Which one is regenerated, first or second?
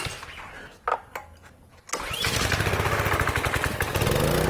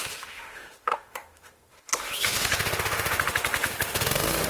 second